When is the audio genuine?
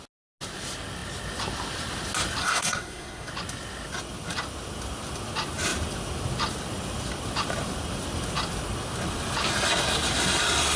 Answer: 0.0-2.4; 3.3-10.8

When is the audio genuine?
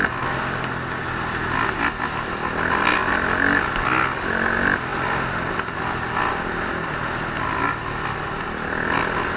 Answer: 0.0-9.4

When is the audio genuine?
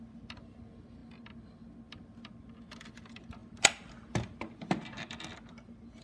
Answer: 0.0-6.0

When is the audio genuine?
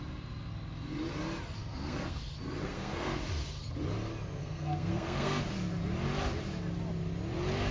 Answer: 0.0-1.6; 2.2-2.6; 3.2-4.4; 5.4-7.7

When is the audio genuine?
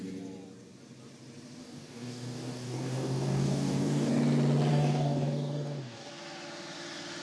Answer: 0.0-1.6; 4.1-4.7; 6.1-7.2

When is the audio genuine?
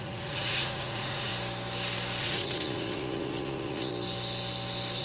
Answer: 1.3-2.2; 3.9-5.0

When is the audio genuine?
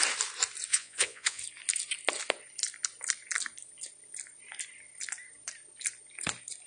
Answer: 0.0-0.7; 1.4-6.7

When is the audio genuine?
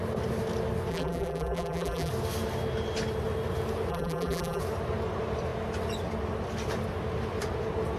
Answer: 0.0-0.9; 2.1-3.9; 4.6-8.0